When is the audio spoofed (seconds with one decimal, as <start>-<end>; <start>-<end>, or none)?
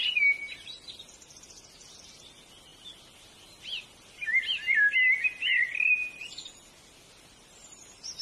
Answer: none